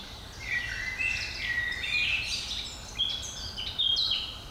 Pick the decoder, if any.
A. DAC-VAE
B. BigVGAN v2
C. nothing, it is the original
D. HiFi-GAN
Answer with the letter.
C